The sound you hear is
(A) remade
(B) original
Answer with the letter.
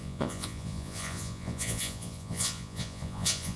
A